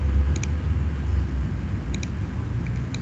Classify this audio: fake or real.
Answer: real